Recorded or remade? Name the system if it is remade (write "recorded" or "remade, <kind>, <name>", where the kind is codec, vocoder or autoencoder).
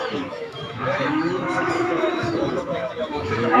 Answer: remade, autoencoder, DAC-VAE